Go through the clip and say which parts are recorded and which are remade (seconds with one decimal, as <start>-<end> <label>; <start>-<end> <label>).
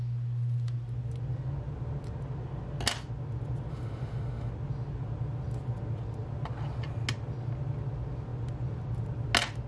0.0-3.7 recorded; 3.7-4.5 remade; 4.5-9.7 recorded